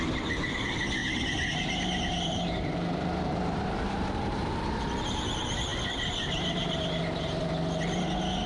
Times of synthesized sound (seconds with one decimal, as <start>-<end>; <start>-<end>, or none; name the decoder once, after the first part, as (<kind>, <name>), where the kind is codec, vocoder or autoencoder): 1.0-4.6 (vocoder, BigVGAN v2)